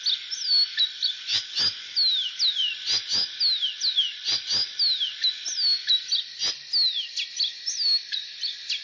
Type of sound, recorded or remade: recorded